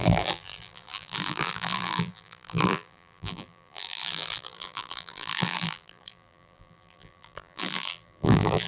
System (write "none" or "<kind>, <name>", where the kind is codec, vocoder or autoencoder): vocoder, BigVGAN v2